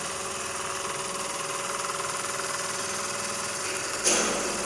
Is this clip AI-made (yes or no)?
no